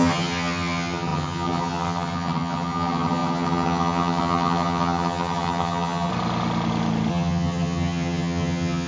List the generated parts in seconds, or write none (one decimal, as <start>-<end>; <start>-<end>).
0.0-6.1; 7.1-8.9

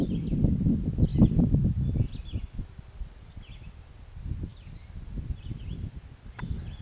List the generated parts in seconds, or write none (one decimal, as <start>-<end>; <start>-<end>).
none

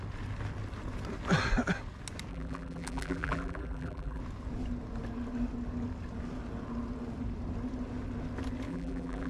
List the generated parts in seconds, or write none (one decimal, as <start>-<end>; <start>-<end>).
2.3-4.2; 8.7-9.3

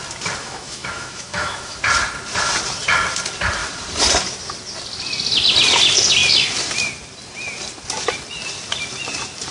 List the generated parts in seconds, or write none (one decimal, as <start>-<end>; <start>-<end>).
0.4-1.8

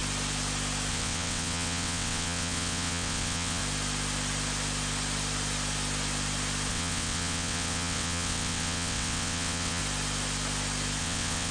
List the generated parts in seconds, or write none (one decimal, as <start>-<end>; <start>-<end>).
0.9-3.6; 6.7-9.8; 11.0-11.5

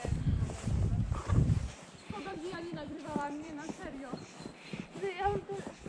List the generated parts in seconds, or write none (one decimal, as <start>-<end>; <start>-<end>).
1.2-4.2

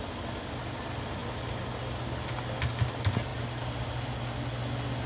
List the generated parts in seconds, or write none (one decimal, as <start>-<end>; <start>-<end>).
none